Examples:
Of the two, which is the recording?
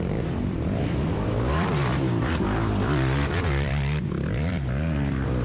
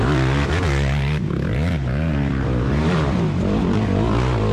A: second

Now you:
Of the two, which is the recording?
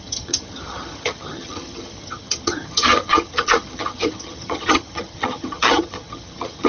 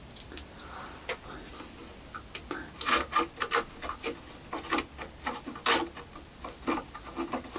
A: second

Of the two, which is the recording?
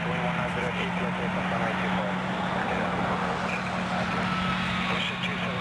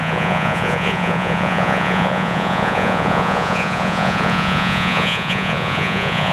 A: first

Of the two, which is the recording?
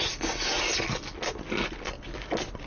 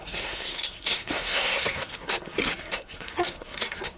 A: first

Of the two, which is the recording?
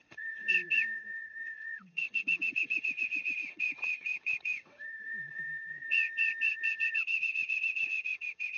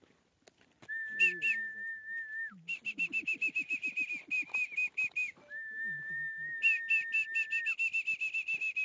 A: second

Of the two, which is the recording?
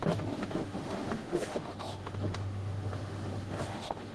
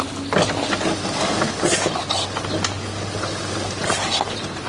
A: second